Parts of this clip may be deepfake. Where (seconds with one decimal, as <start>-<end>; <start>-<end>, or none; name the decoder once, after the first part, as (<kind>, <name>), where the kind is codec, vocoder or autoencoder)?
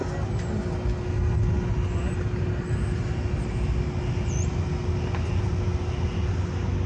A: none